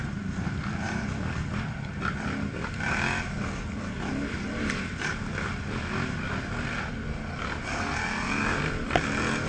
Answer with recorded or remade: recorded